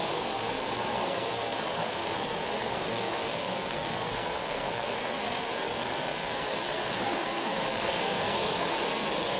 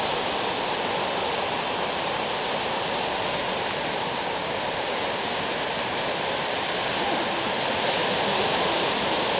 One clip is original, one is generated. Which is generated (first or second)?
first